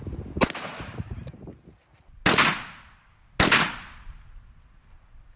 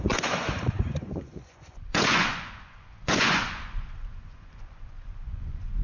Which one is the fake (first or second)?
second